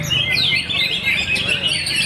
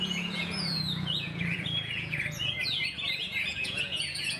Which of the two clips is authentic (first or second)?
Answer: first